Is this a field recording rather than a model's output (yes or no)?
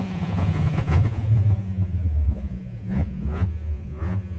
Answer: no